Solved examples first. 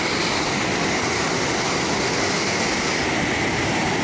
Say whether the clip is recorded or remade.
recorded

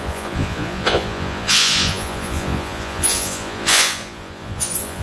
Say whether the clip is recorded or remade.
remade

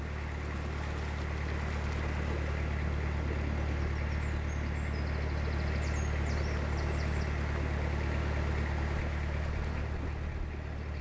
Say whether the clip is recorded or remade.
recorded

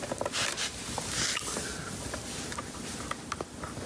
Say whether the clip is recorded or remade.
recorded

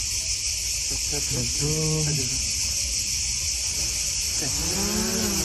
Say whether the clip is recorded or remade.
recorded